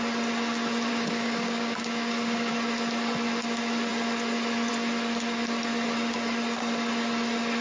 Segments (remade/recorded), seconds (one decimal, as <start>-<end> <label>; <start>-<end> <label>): 0.0-0.9 recorded; 0.9-2.5 remade; 2.5-7.6 recorded